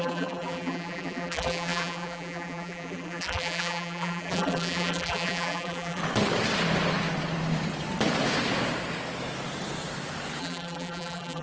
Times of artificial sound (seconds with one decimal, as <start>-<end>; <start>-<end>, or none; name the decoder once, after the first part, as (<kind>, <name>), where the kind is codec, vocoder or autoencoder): 0.0-6.0 (vocoder, BigVGAN v2); 10.4-11.4